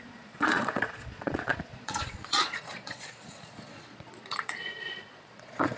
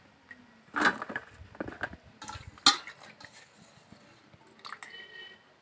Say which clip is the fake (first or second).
first